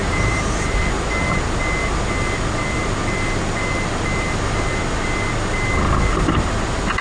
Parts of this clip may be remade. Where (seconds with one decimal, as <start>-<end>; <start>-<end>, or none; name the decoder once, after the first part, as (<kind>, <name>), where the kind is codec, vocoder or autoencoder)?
0.0-0.8 (vocoder, BigVGAN v2)